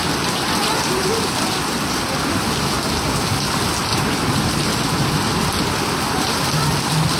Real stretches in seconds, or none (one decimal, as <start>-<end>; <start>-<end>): 0.0-3.9; 4.5-7.2